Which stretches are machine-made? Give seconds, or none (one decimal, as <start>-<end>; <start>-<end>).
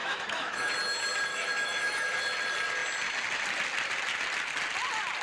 0.0-0.7; 1.3-2.2